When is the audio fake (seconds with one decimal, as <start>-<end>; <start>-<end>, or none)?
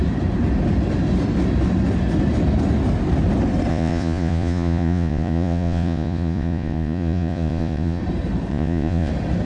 3.7-8.0; 8.5-9.1